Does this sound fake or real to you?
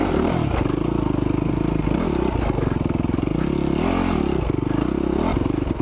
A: real